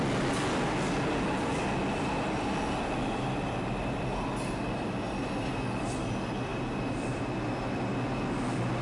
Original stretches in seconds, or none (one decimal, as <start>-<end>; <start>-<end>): 0.0-8.8

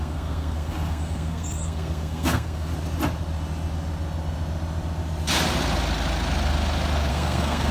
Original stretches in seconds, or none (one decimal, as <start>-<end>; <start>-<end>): 2.7-7.1

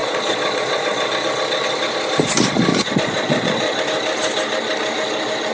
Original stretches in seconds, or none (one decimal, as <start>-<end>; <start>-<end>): 1.1-2.7; 3.8-5.5

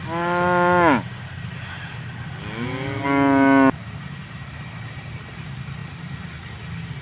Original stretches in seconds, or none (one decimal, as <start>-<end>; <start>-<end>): 0.0-7.0

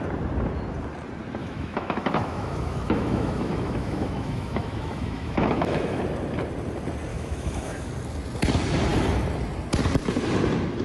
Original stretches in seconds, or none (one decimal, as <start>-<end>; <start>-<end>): 0.0-1.4; 6.0-7.1; 7.9-10.8

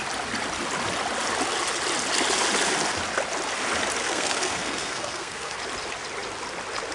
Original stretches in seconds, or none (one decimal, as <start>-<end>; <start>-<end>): 0.0-4.0; 5.6-6.9

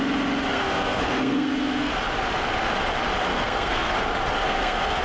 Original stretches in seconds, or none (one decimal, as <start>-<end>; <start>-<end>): 0.0-0.5; 1.9-3.3; 3.9-4.4

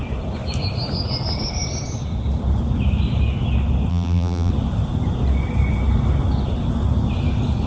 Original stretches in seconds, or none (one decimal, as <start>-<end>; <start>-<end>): 0.0-3.9; 4.5-7.7